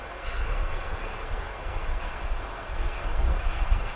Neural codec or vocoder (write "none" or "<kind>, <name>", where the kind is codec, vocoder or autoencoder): codec, SNAC